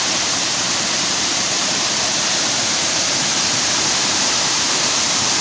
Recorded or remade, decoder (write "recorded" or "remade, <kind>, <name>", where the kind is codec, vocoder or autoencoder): remade, vocoder, BigVGAN v2